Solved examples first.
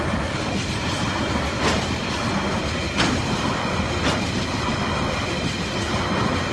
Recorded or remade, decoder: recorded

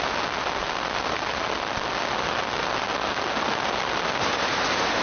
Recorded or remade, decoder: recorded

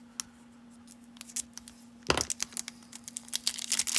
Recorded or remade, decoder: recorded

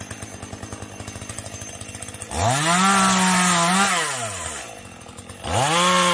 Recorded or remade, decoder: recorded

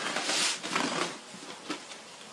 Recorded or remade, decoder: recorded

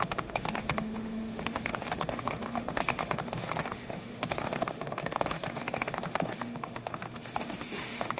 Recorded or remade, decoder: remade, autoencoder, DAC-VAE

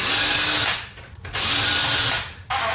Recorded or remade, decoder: recorded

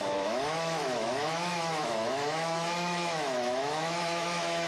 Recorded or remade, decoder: remade, autoencoder, DAC-VAE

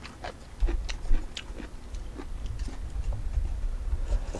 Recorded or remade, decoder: recorded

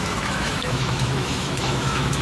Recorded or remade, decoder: remade, autoencoder, DAC-VAE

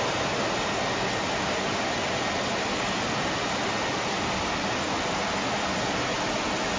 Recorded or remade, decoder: recorded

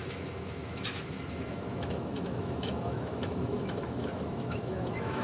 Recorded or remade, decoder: remade, autoencoder, DAC-VAE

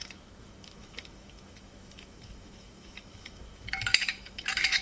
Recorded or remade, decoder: remade, autoencoder, DAC-VAE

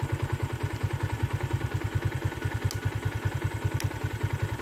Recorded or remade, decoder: recorded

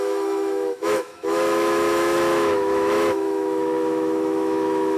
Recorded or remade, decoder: remade, autoencoder, DAC-VAE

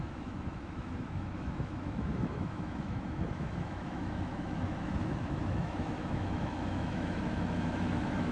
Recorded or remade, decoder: remade, autoencoder, DAC-VAE